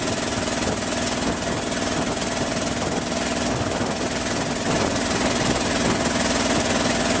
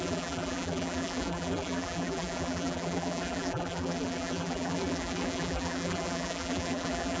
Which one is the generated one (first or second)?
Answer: second